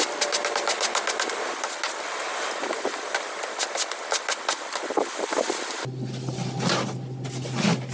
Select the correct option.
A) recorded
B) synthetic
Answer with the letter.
A